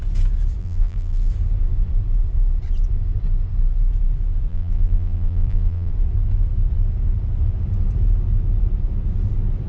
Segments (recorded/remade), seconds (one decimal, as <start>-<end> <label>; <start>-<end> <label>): 0.0-0.6 recorded; 0.6-1.3 remade; 1.3-4.5 recorded; 4.5-5.9 remade; 5.9-9.7 recorded